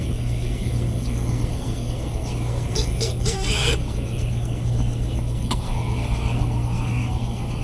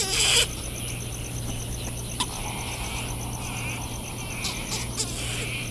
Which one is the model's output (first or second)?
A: first